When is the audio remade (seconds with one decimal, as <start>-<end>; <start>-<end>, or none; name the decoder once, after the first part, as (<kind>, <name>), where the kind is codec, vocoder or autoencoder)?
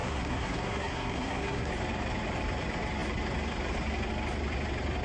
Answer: 0.0-1.7 (codec, SNAC)